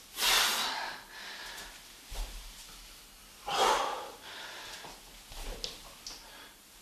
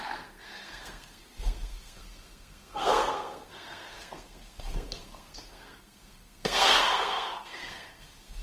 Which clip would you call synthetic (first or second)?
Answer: second